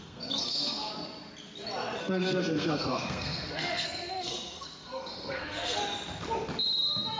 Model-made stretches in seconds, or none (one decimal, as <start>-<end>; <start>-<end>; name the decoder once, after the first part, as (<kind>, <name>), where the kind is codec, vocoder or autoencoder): 0.0-0.9 (codec, SNAC); 2.0-5.8